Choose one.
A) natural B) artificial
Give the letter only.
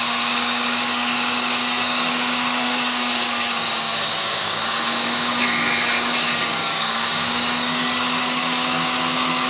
B